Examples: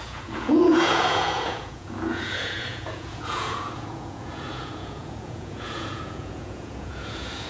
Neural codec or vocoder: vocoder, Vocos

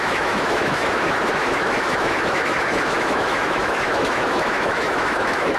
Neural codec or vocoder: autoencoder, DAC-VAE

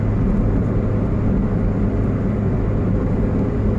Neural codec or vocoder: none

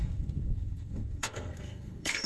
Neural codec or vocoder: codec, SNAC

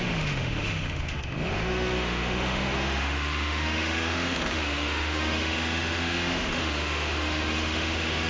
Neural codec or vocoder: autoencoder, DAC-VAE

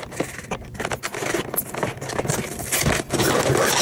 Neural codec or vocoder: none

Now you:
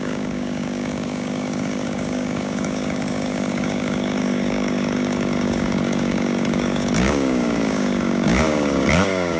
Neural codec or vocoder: codec, DAC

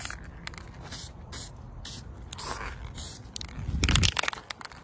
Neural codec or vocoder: none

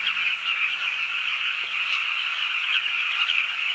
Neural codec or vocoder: codec, DAC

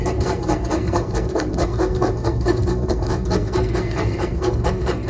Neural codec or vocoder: codec, SNAC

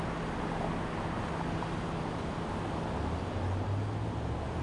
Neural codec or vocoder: none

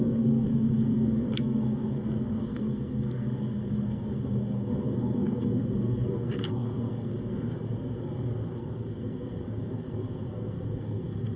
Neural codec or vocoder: codec, SNAC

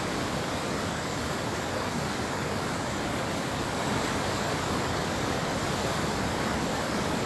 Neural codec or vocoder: codec, DAC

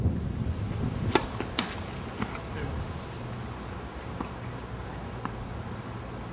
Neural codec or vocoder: none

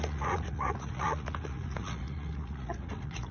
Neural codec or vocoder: vocoder, Vocos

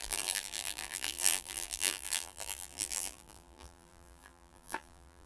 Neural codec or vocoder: vocoder, BigVGAN v2